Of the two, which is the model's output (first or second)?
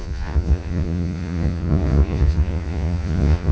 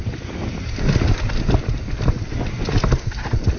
first